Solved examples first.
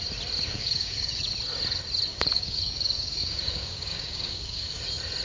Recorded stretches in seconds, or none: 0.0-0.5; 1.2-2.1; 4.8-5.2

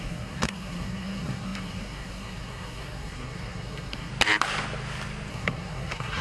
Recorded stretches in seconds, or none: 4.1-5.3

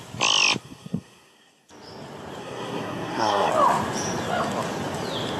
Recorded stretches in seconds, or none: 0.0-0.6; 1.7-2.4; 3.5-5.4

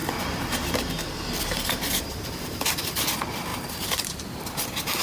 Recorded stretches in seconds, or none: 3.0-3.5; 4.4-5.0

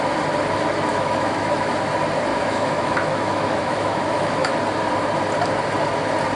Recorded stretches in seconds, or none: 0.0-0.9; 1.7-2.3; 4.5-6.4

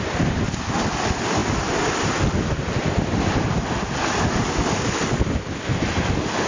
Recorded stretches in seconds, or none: 0.0-6.5

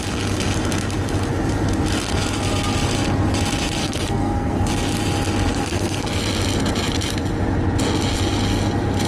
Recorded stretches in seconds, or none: 0.0-3.8; 4.7-5.5; 6.2-9.1

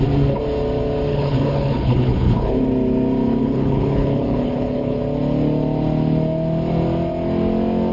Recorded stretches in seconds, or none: 0.0-1.1; 2.6-3.4; 5.0-7.9